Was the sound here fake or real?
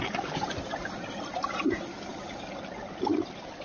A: real